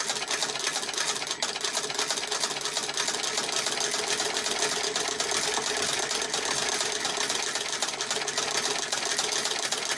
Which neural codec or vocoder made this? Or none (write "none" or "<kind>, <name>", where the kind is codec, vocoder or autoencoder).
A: none